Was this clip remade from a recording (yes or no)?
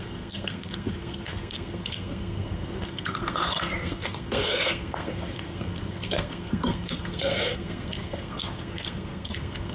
yes